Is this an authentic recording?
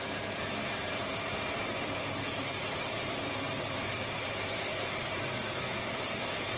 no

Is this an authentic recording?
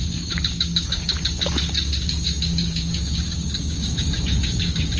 no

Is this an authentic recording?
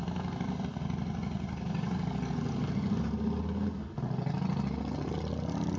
yes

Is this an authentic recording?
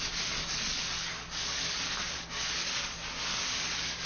no